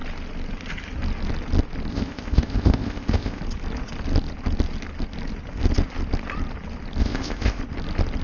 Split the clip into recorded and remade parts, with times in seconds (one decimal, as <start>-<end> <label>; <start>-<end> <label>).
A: 0.0-1.9 recorded; 1.9-3.4 remade; 3.4-7.0 recorded; 7.0-7.6 remade; 7.6-8.2 recorded